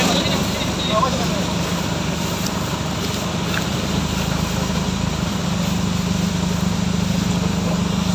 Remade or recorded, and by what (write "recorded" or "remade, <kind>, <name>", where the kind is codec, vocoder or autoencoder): recorded